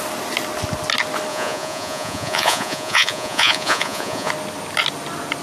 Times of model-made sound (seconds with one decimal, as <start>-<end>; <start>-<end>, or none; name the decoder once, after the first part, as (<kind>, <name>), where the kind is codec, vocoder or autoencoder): 1.3-4.3 (vocoder, Vocos)